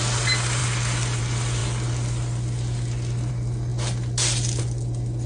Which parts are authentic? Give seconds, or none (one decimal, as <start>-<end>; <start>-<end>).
0.0-5.3